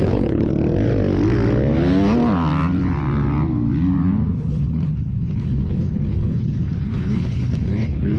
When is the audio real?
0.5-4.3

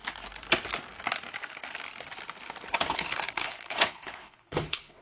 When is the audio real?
0.0-2.9

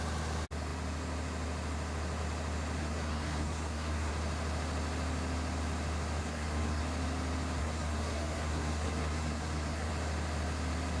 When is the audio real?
0.0-2.8; 4.1-6.2; 6.8-7.6; 9.9-11.0

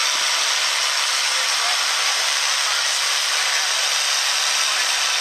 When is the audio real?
0.0-5.2

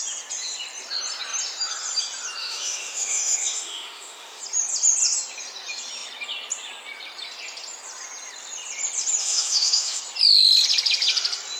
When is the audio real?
0.0-2.4; 4.4-9.2; 10.0-11.6

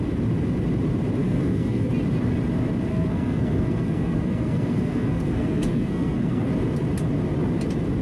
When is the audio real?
0.0-1.2; 1.9-2.9; 6.5-8.0

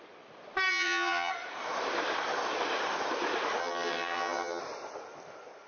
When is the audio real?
0.0-0.7; 1.3-3.6; 4.6-5.7